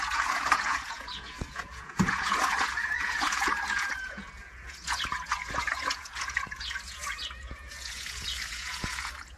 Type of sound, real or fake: fake